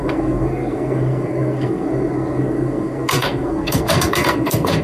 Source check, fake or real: fake